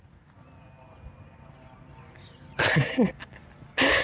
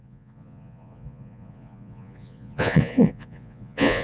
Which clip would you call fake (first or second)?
second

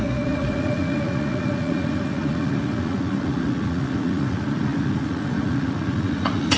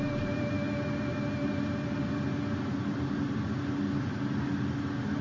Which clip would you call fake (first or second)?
first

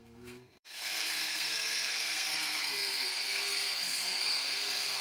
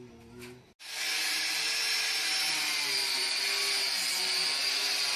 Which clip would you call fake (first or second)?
first